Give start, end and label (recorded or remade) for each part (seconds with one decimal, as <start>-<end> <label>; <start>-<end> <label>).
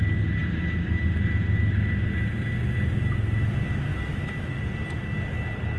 0.0-3.9 recorded; 3.9-4.6 remade; 4.6-5.8 recorded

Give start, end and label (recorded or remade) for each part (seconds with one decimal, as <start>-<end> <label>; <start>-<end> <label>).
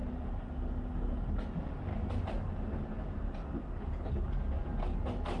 0.0-5.4 recorded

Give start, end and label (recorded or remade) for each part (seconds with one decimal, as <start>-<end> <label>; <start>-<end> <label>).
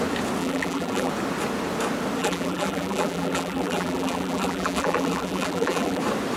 0.0-0.4 recorded; 0.4-1.1 remade; 1.1-2.2 recorded; 2.2-6.0 remade; 6.0-6.4 recorded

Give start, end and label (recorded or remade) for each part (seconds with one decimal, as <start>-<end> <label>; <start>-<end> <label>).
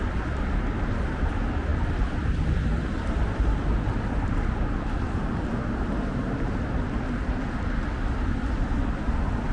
0.0-1.7 recorded; 1.7-4.0 remade; 4.0-9.5 recorded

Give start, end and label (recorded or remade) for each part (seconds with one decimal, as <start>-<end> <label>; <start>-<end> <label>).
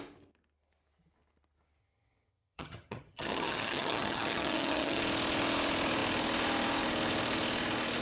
0.0-1.8 recorded; 1.8-5.0 remade; 5.0-8.0 recorded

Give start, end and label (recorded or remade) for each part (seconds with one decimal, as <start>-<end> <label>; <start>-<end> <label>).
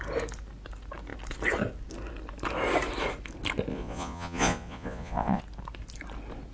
0.0-3.7 recorded; 3.7-5.4 remade; 5.4-6.5 recorded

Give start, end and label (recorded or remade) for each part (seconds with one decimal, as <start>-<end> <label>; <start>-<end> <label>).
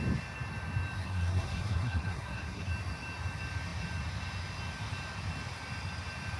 0.0-1.0 recorded; 1.0-2.7 remade; 2.7-6.4 recorded